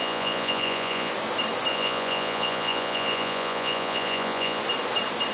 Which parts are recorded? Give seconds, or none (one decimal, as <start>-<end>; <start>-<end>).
1.1-1.7; 4.6-5.3